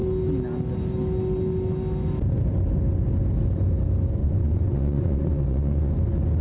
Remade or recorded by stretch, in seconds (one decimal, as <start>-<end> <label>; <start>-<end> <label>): 0.0-4.2 recorded; 4.2-5.9 remade; 5.9-6.4 recorded

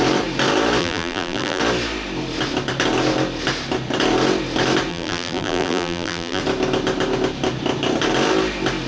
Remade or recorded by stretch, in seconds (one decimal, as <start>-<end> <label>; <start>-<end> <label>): 0.0-0.8 recorded; 0.8-1.6 remade; 1.6-4.9 recorded; 4.9-6.4 remade; 6.4-8.9 recorded